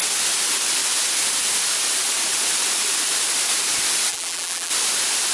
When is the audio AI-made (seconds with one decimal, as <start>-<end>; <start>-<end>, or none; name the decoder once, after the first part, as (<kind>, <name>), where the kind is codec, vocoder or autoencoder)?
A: 4.1-4.7 (vocoder, BigVGAN v2)